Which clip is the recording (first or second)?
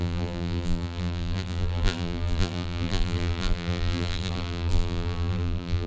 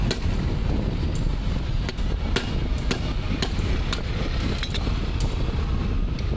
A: second